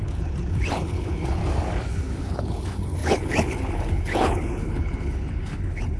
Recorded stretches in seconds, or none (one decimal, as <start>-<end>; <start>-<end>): 1.4-1.9